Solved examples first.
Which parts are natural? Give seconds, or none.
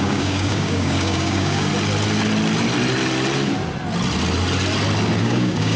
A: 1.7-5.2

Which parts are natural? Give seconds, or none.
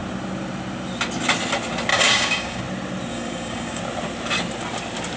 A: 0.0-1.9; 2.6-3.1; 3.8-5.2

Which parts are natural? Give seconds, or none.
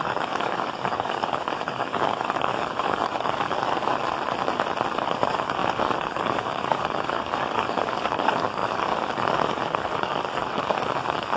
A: 4.0-5.0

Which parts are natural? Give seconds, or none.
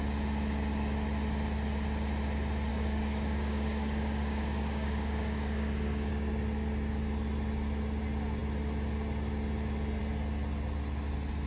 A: 0.0-2.7; 6.1-11.5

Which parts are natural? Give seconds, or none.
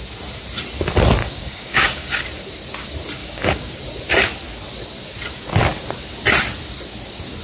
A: 0.0-1.2; 2.2-3.2; 3.8-7.4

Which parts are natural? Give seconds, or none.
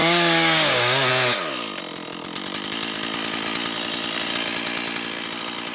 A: 1.1-5.7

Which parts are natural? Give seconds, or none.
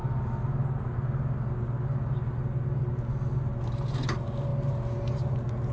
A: 0.0-5.7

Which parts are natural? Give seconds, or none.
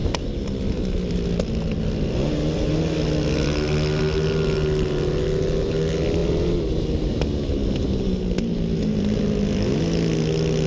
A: 0.0-10.7